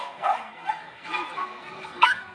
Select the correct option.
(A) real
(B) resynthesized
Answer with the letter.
B